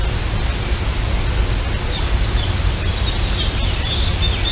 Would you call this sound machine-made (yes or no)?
no